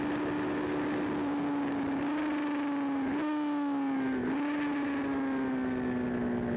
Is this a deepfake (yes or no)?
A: no